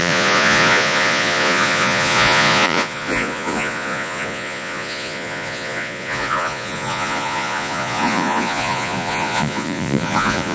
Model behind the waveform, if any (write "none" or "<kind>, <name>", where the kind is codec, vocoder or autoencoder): vocoder, Vocos